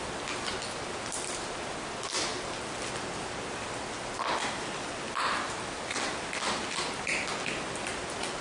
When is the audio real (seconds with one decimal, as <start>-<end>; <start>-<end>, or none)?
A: 0.0-8.4